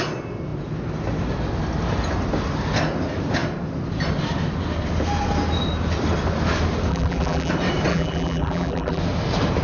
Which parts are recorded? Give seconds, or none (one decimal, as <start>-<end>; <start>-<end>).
0.0-6.9; 7.5-7.9; 9.0-9.6